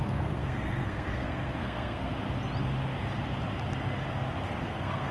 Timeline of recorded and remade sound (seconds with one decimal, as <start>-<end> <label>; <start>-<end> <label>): 0.0-2.1 remade; 2.1-4.6 recorded; 4.6-5.1 remade

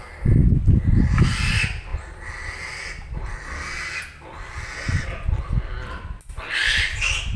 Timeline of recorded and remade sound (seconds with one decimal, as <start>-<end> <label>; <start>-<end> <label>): 0.0-7.4 recorded